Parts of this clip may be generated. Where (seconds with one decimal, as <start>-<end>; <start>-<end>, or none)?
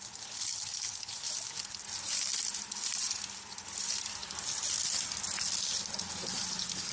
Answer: none